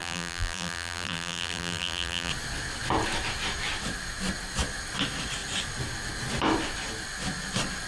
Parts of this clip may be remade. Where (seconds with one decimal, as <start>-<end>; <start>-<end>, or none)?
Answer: 0.0-2.3